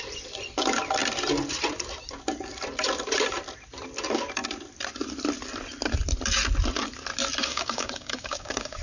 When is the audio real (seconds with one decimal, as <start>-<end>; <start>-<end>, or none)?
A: 0.0-7.5